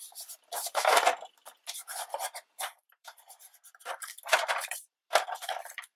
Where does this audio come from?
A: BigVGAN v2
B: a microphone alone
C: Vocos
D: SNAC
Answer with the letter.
A